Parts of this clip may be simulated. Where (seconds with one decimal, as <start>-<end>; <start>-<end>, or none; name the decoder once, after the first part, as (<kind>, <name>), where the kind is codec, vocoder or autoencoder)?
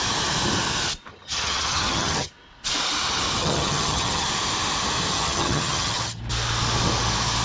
1.1-2.3 (vocoder, HiFi-GAN); 3.4-4.3; 5.1-6.2